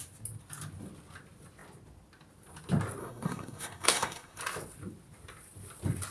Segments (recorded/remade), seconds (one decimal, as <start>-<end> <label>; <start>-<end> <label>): 0.0-3.0 recorded; 3.0-4.4 remade; 4.4-6.1 recorded